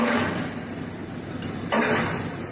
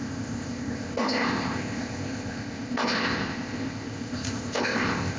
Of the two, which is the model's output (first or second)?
second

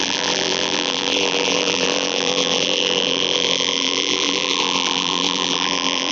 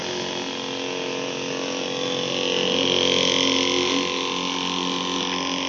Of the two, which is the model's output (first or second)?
first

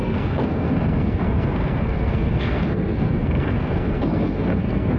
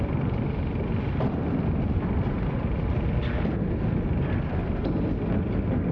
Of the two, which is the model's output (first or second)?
first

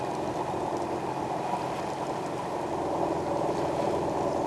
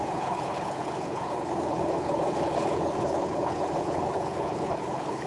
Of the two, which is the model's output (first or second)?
second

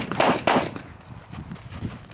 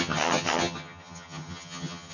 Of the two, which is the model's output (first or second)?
second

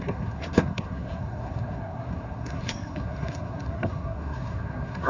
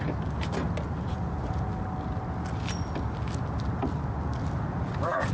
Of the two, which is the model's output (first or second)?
first